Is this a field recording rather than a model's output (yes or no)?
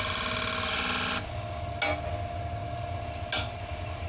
yes